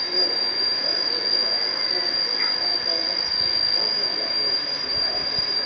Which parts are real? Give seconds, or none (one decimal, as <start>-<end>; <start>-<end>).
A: 0.9-4.3